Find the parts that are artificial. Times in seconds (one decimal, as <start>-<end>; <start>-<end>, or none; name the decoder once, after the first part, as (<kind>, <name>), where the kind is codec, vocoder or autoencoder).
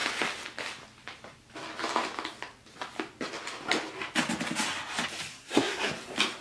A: 5.3-5.9 (codec, SNAC)